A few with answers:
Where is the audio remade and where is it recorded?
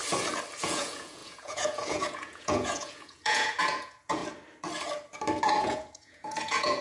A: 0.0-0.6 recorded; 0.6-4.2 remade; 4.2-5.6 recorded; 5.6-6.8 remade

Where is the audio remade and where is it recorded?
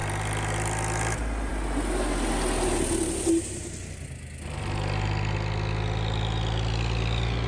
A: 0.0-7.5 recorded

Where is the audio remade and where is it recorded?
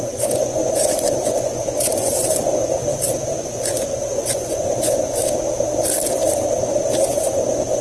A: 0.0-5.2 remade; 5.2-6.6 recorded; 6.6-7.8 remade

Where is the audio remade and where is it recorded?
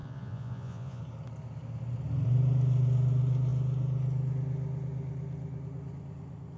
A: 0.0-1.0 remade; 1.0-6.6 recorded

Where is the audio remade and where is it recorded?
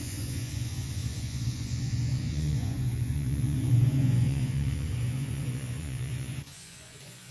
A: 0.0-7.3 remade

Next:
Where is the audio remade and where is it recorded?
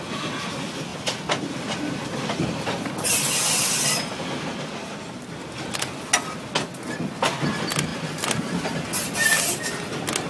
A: 0.0-10.3 recorded